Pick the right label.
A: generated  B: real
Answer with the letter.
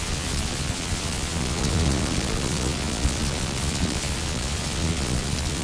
A